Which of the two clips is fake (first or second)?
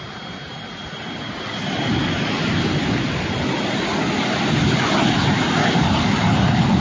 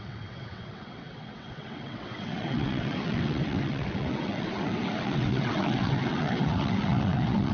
second